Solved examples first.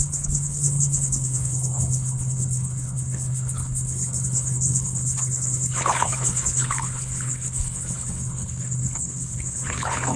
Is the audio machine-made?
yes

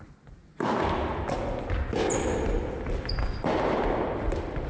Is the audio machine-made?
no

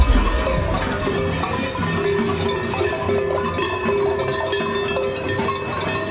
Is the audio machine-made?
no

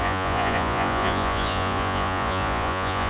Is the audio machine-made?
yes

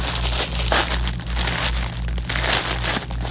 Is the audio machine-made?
no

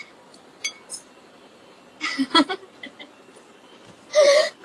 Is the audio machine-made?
no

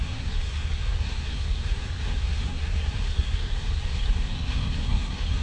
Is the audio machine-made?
yes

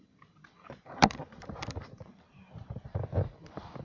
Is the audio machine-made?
yes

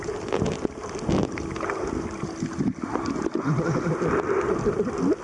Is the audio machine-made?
no